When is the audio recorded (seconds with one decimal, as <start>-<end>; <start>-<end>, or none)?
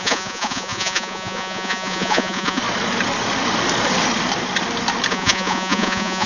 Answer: 2.6-5.1